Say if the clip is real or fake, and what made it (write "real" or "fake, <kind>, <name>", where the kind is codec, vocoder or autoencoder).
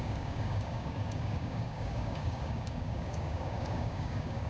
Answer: fake, codec, DAC